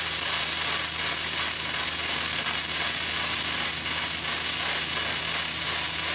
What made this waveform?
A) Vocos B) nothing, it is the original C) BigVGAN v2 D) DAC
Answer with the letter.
B